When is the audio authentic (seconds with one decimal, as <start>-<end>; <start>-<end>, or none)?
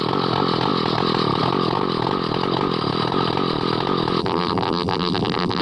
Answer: 0.0-4.2